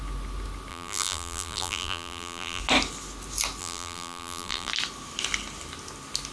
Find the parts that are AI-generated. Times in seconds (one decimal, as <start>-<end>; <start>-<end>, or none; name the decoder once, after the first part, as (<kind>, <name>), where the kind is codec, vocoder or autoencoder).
0.7-2.6 (vocoder, BigVGAN v2); 3.6-4.7